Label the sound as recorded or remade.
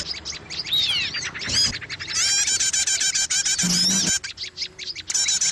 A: recorded